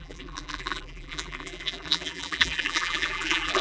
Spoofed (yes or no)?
yes